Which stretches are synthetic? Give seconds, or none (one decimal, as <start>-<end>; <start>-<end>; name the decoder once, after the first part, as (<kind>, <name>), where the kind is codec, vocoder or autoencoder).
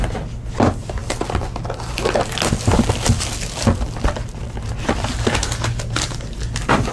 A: none